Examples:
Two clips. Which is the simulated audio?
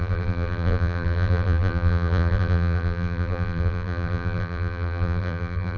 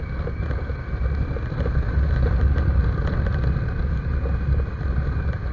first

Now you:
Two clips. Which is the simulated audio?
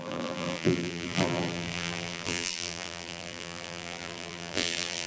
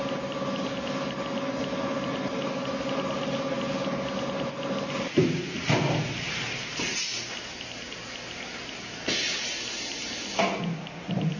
first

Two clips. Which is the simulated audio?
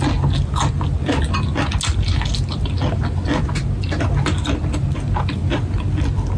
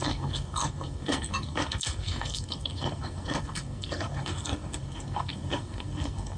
second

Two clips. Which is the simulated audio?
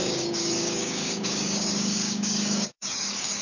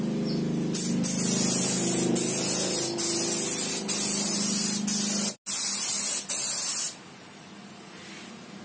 first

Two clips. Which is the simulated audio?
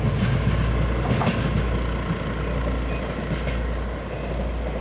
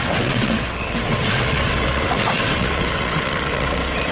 second